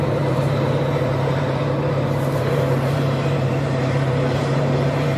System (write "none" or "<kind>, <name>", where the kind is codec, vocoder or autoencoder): vocoder, BigVGAN v2